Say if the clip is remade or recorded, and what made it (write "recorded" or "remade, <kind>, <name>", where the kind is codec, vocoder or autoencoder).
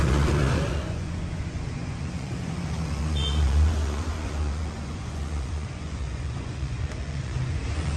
remade, vocoder, Vocos